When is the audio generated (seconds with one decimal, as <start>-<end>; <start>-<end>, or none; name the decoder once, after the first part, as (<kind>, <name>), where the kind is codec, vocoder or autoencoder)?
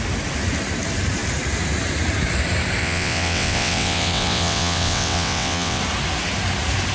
2.8-5.8 (vocoder, WaveNeXt)